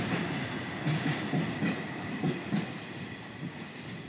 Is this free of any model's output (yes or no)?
yes